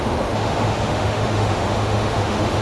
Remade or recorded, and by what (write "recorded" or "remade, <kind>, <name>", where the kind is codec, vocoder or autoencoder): remade, autoencoder, DAC-VAE